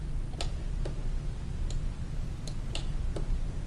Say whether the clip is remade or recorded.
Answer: recorded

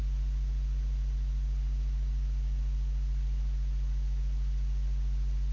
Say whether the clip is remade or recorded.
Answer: recorded